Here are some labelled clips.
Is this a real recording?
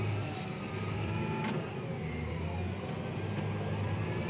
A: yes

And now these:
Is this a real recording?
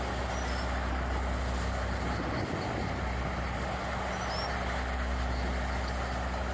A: yes